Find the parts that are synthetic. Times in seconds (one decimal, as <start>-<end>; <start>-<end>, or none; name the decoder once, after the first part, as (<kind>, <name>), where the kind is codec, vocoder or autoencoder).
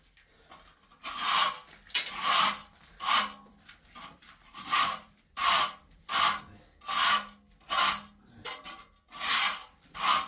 2.6-6.0 (vocoder, BigVGAN v2)